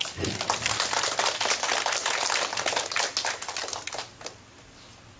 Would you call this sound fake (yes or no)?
no